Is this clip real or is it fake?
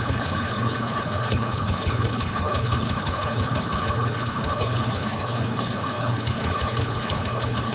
fake